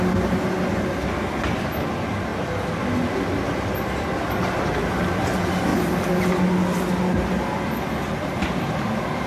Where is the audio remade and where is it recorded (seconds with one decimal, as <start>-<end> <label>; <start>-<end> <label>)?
0.0-9.3 recorded